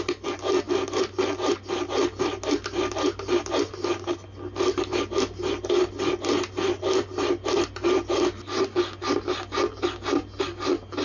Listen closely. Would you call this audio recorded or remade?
recorded